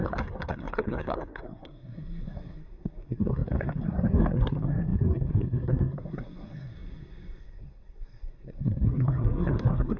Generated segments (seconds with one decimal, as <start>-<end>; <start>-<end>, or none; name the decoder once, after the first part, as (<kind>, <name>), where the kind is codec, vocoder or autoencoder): 0.0-10.0 (codec, SNAC)